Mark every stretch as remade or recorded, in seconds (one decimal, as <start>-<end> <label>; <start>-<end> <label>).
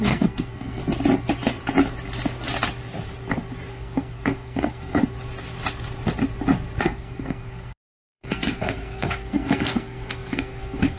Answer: 0.0-0.8 remade; 0.8-3.7 recorded; 3.7-5.0 remade; 5.0-6.8 recorded; 6.8-11.0 remade